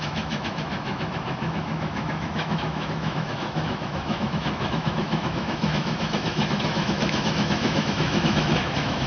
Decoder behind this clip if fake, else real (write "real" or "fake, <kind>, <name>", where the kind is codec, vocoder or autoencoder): fake, autoencoder, DAC-VAE